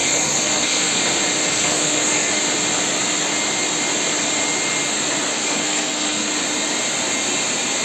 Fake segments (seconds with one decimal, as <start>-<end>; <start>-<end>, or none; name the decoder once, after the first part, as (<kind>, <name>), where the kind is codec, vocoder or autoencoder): 0.0-1.0 (codec, SNAC); 1.5-2.4; 5.3-6.3